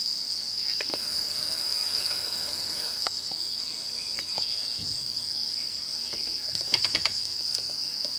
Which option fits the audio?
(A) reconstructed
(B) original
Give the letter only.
A